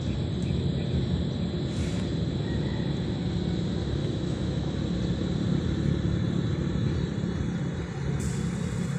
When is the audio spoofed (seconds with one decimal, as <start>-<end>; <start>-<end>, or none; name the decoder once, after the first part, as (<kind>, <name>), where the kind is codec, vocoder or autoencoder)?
4.0-4.8 (autoencoder, DAC-VAE)